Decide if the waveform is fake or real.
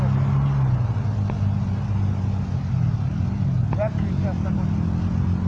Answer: real